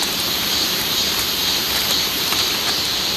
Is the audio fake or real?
fake